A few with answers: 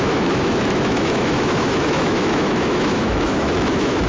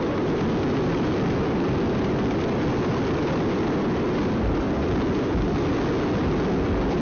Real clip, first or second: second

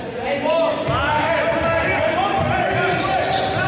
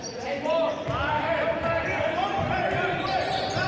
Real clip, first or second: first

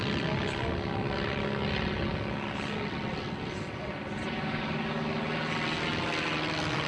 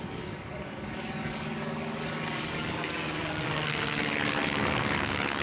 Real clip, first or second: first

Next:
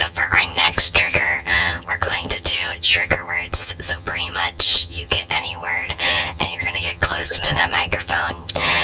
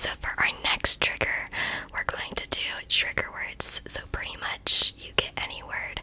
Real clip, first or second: second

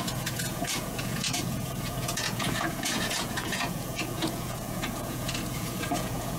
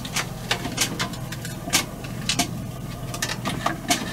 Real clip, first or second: second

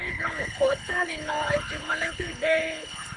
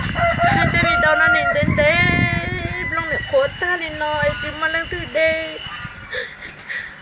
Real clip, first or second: second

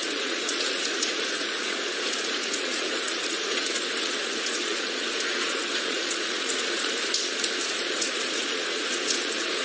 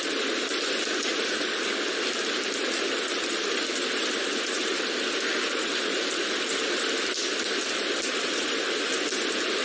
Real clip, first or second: second